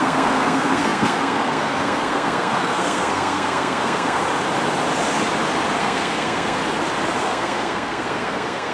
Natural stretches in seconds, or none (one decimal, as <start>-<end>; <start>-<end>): 4.2-5.8; 6.6-7.2